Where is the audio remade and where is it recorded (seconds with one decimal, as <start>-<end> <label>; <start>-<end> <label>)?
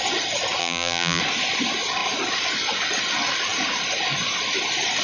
0.0-0.6 recorded; 0.6-1.2 remade; 1.2-5.0 recorded